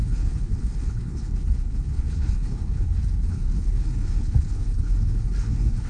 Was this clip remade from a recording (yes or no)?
yes